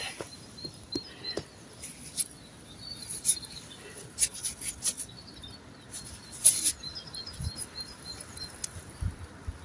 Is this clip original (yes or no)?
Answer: yes